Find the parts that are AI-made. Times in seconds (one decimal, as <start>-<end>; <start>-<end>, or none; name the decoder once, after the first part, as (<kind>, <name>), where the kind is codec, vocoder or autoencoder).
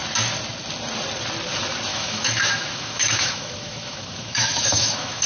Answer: 1.9-5.3 (autoencoder, DAC-VAE)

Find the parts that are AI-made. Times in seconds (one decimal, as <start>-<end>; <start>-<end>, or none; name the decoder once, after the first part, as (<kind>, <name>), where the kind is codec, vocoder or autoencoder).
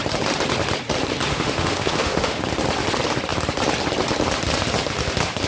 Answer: 1.3-2.4 (autoencoder, DAC-VAE)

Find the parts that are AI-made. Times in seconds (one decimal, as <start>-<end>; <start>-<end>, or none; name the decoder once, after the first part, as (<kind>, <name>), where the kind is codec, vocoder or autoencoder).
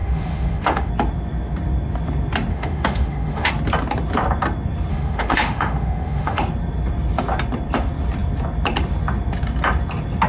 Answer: 0.0-0.9 (autoencoder, DAC-VAE); 2.5-3.5; 4.9-6.4